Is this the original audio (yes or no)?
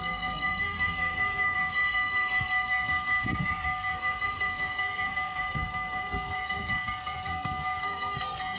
no